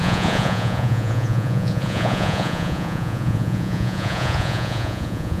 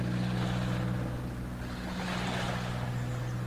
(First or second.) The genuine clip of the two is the second